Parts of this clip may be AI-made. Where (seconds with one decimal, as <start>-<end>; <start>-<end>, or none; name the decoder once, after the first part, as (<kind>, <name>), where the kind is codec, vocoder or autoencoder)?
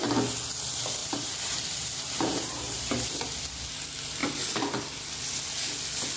1.0-3.1 (vocoder, BigVGAN v2)